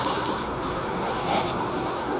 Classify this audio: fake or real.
fake